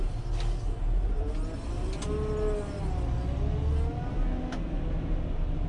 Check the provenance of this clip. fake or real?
real